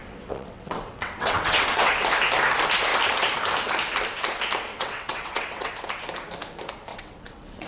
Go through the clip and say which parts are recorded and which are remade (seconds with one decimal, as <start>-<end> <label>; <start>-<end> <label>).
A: 0.0-1.9 remade; 1.9-4.7 recorded; 4.7-5.7 remade; 5.7-6.9 recorded; 6.9-7.7 remade